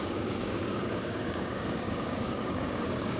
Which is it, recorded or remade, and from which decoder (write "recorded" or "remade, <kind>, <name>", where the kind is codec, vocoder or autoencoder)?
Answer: remade, codec, DAC